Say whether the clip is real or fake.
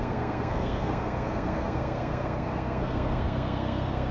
fake